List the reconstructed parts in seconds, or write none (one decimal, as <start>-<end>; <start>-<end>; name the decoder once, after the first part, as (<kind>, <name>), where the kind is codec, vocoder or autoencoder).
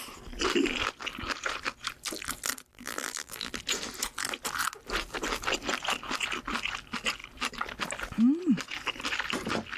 2.7-3.5 (vocoder, BigVGAN v2)